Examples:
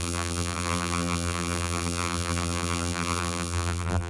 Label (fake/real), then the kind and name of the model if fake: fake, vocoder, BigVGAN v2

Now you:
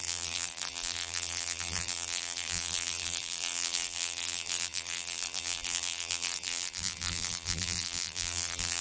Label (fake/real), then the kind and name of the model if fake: fake, vocoder, BigVGAN v2